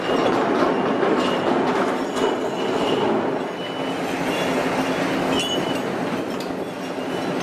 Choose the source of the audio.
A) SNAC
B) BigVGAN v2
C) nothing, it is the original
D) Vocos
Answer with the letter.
C